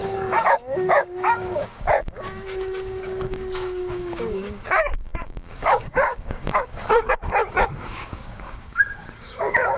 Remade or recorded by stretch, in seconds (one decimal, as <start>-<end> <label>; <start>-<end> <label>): 0.0-9.8 remade